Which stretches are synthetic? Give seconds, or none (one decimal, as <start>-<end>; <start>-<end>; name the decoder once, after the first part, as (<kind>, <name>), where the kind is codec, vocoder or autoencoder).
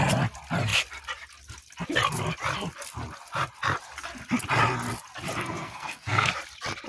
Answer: 5.4-6.3 (codec, SNAC)